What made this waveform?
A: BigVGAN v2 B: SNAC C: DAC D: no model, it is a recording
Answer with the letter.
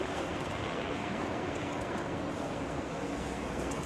B